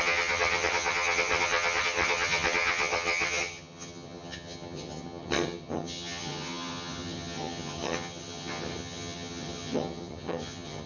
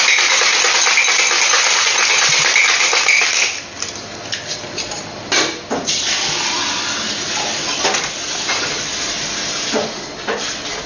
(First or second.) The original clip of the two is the second